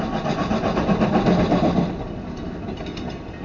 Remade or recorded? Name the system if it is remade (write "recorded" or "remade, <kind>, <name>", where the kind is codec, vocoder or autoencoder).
recorded